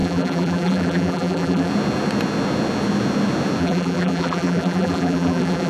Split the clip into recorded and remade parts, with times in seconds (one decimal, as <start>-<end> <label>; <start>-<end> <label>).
0.0-1.7 remade; 1.7-3.6 recorded; 3.6-5.7 remade